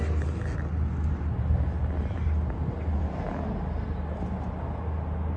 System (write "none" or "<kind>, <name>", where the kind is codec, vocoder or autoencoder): none